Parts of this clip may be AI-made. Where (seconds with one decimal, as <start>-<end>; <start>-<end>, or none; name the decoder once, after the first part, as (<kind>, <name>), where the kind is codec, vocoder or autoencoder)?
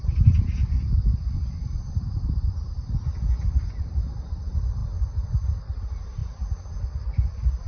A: 0.0-0.6 (vocoder, BigVGAN v2); 1.1-4.8; 5.6-6.2; 6.8-7.7